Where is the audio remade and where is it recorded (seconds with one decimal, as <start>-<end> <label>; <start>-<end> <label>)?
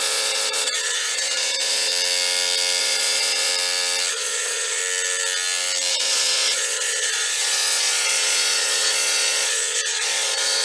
0.0-1.9 remade; 1.9-2.8 recorded; 2.8-3.5 remade; 3.5-4.1 recorded; 4.1-4.8 remade; 4.8-5.9 recorded; 5.9-10.6 remade